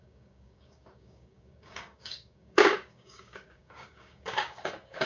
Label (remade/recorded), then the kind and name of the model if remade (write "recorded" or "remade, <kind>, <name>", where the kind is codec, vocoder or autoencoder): remade, codec, DAC